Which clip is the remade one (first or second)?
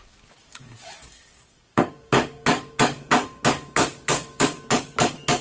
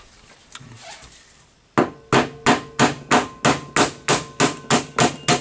first